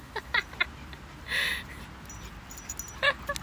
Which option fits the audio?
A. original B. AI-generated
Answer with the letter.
A